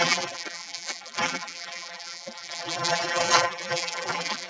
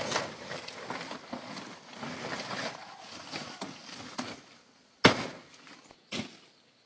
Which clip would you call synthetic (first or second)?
first